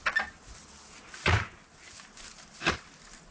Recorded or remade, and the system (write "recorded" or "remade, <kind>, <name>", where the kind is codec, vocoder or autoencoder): recorded